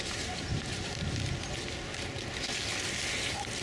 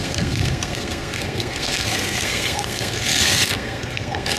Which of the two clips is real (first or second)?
first